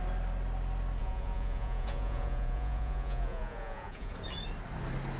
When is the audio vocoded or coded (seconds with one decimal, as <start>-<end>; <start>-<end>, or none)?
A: 1.0-4.1